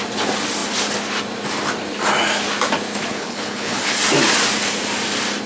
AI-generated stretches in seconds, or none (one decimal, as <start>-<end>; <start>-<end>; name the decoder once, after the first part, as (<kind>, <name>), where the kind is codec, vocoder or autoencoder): 3.1-3.8 (codec, HILCodec)